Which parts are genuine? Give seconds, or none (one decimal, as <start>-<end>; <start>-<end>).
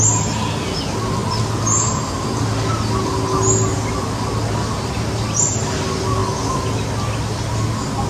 0.0-8.1